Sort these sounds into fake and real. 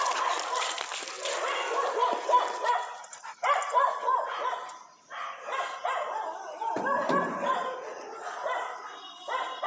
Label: real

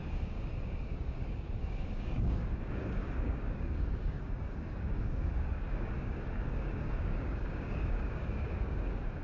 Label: fake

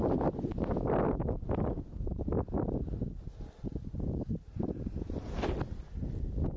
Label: real